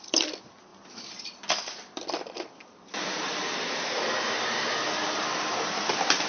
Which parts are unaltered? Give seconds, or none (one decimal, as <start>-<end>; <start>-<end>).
none